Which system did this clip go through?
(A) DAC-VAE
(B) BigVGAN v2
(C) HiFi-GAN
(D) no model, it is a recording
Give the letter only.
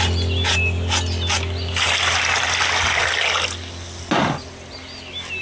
D